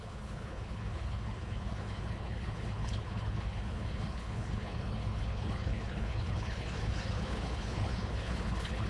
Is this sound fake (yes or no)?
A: yes